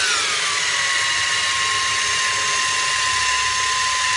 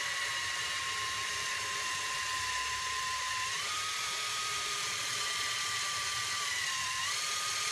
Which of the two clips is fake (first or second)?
second